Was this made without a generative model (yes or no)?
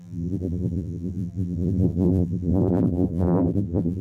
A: no